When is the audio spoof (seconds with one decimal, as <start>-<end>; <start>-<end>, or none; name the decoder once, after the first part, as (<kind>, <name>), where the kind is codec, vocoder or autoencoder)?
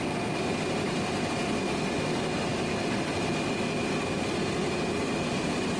none